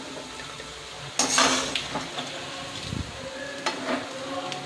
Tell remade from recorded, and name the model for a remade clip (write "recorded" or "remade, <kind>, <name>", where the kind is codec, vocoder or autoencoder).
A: recorded